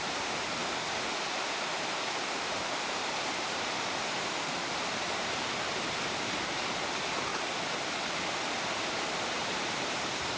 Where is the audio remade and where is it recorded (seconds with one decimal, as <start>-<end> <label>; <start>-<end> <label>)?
0.0-0.6 remade; 0.6-2.4 recorded; 2.4-7.3 remade; 7.3-9.7 recorded; 9.7-10.4 remade